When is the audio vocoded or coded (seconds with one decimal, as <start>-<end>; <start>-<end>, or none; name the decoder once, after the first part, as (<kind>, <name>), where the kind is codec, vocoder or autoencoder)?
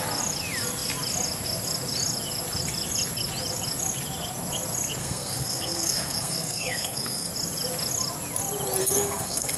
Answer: 5.0-7.3 (codec, SNAC); 8.8-9.6